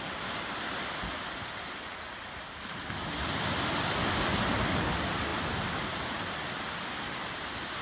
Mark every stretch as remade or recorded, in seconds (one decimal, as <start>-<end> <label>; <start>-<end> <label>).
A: 0.0-7.8 recorded